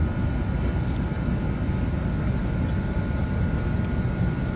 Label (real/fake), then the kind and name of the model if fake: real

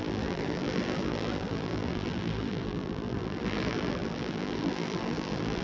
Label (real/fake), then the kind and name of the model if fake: fake, vocoder, BigVGAN v2